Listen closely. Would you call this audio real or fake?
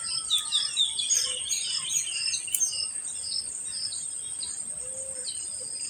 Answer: real